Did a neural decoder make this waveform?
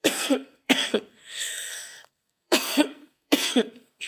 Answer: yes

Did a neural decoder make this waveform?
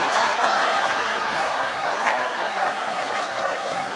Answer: yes